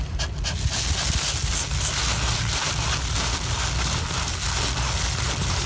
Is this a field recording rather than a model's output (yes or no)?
yes